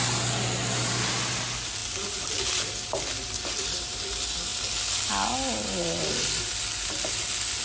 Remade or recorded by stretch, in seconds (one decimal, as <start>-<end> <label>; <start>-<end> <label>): 0.0-7.6 recorded